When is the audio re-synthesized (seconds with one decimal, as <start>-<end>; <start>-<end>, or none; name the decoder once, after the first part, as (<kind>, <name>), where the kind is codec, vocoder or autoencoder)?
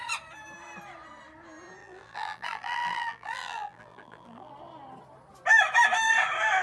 1.8-4.5 (vocoder, BigVGAN v2)